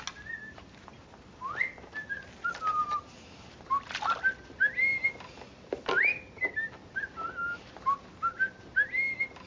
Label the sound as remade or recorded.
recorded